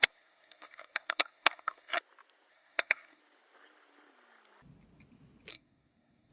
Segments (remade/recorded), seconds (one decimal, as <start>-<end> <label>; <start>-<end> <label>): 0.0-2.0 remade; 2.0-2.5 recorded; 2.5-3.2 remade; 3.2-5.5 recorded; 5.5-6.3 remade